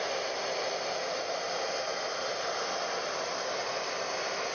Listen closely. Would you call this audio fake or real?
real